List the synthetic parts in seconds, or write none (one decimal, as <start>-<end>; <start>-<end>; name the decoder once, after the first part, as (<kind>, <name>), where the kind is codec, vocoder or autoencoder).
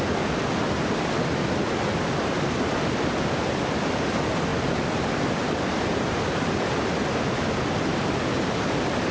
none